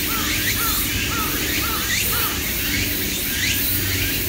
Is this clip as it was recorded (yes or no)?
yes